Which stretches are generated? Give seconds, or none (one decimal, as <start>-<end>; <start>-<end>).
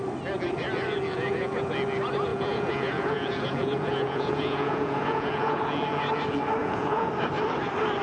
1.1-1.7; 2.3-5.6; 6.6-7.1